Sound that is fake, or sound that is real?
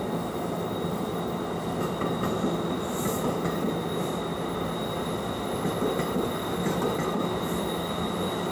real